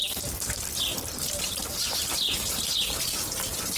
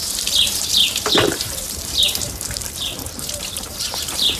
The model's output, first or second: second